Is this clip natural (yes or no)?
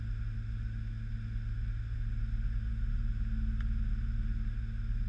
yes